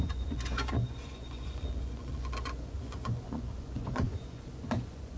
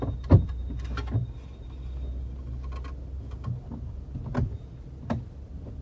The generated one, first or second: first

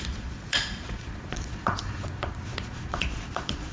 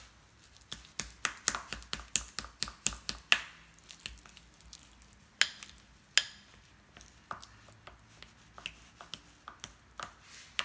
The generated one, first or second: first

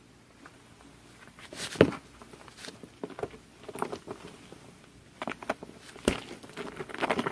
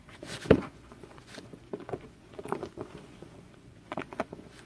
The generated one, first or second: second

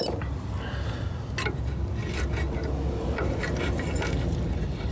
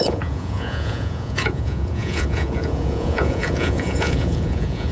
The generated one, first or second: second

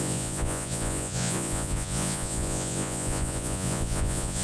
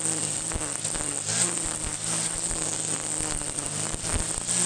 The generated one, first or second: first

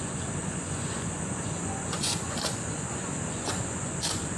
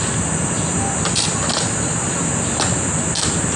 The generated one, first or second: first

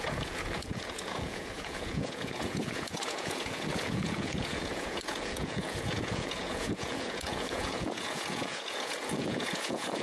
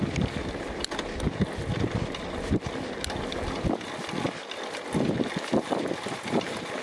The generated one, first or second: first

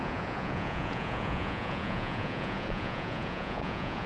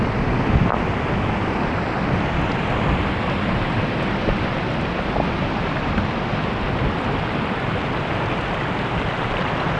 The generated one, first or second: first